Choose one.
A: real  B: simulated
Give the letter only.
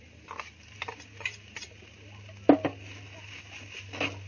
A